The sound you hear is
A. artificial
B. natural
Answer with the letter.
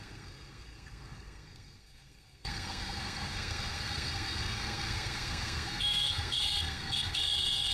A